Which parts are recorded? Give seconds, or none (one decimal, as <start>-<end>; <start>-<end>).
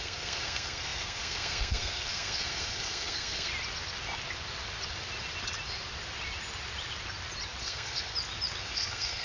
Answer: 3.5-7.6; 8.1-8.6